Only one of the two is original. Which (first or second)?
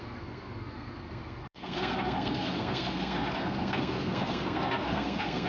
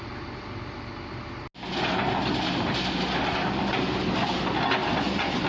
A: second